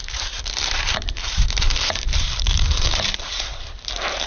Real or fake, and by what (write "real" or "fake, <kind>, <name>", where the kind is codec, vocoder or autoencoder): fake, vocoder, BigVGAN v2